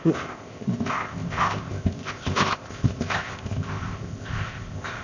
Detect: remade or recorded remade